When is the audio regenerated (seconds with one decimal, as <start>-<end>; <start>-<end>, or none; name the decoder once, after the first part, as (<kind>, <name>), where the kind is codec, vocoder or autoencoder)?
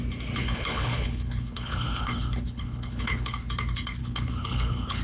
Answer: 0.4-3.4 (codec, HILCodec); 4.0-5.0